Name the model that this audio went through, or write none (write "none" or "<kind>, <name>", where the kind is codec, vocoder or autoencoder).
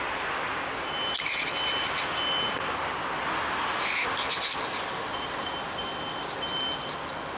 none